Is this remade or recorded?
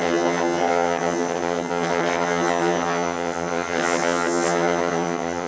remade